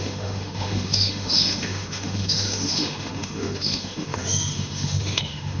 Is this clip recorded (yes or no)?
no